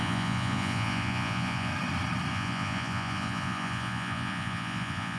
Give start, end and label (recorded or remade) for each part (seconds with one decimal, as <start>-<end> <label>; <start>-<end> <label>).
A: 0.0-1.7 remade; 1.7-2.3 recorded; 2.3-5.2 remade